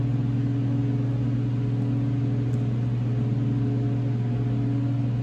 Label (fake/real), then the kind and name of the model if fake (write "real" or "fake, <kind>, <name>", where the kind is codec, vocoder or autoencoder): real